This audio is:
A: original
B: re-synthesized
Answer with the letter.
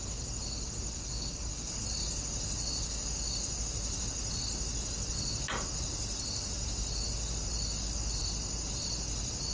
A